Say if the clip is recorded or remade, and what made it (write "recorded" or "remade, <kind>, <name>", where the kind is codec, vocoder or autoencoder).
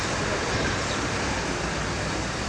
recorded